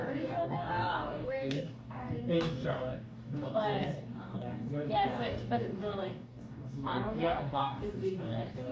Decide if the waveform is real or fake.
fake